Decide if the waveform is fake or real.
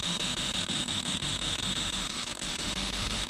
fake